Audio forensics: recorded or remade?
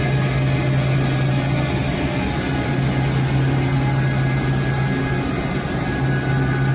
recorded